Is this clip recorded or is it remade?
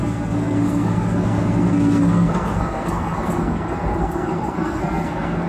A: remade